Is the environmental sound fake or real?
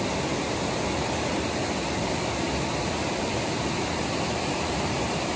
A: real